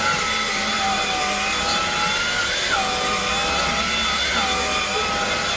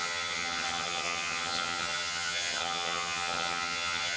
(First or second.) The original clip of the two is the first